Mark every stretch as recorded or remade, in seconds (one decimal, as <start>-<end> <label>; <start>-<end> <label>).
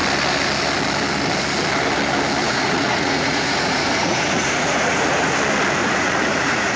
0.0-2.4 recorded; 2.4-5.3 remade; 5.3-5.8 recorded; 5.8-6.8 remade